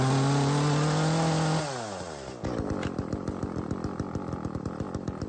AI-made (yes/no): no